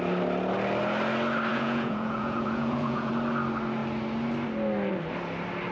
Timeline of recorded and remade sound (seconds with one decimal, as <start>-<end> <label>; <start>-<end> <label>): 0.0-1.5 recorded; 1.5-3.1 remade; 3.1-5.7 recorded